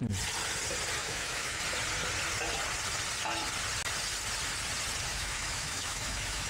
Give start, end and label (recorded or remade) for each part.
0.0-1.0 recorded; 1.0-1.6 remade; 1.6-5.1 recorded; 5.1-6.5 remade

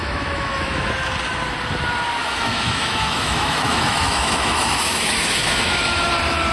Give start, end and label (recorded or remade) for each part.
0.0-0.9 remade; 0.9-2.2 recorded; 2.2-6.1 remade; 6.1-6.5 recorded

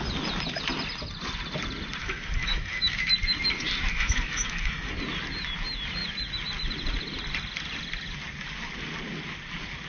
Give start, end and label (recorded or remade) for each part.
0.0-2.0 recorded; 2.0-3.0 remade; 3.0-3.9 recorded; 3.9-4.9 remade; 4.9-9.9 recorded

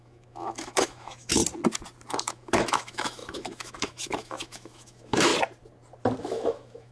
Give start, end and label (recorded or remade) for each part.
0.0-1.4 remade; 1.4-2.1 recorded; 2.1-5.3 remade; 5.3-6.2 recorded; 6.2-6.9 remade

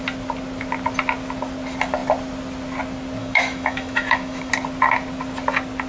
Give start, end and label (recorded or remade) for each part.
0.0-3.2 recorded; 3.2-4.5 remade; 4.5-5.9 recorded

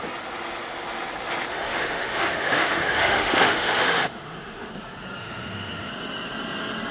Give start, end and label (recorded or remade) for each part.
0.0-1.5 recorded; 1.5-4.7 remade; 4.7-5.2 recorded; 5.2-5.9 remade; 5.9-6.9 recorded

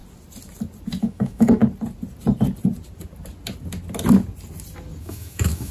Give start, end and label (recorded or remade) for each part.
0.0-1.0 recorded; 1.0-1.6 remade; 1.6-5.0 recorded; 5.0-5.7 remade

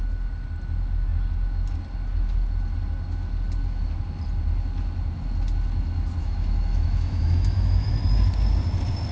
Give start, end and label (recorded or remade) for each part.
0.0-6.2 recorded; 6.2-7.9 remade; 7.9-9.1 recorded